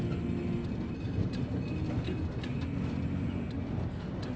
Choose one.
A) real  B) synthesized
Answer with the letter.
A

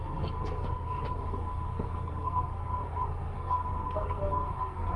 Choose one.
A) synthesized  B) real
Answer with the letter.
A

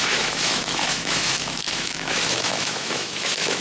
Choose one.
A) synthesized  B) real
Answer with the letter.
A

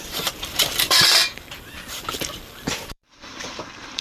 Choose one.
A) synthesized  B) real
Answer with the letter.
A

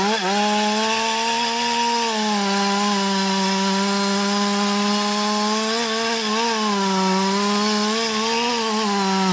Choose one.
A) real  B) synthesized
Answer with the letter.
A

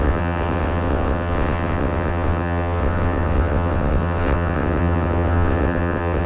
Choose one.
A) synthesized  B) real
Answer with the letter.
A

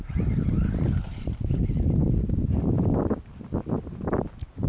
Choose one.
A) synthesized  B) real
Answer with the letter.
B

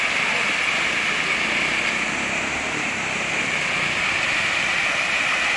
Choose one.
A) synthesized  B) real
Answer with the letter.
B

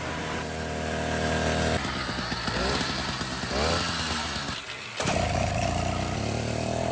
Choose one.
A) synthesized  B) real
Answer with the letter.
B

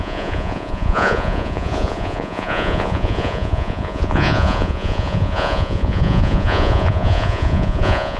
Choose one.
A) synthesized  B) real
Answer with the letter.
A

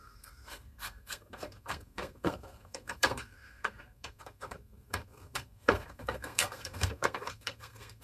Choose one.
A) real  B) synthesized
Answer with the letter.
B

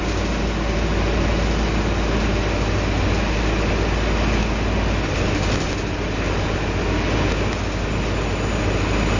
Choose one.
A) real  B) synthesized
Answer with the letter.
A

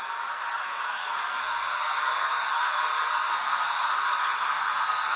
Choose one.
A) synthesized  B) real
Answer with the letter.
A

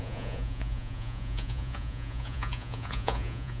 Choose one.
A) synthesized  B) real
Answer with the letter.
A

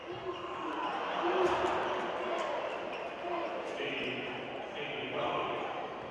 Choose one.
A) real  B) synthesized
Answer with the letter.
A